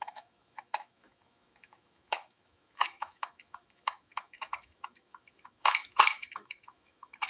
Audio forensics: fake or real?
fake